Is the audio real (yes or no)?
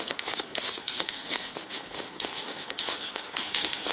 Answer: no